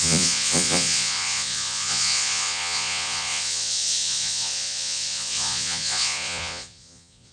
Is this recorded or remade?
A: remade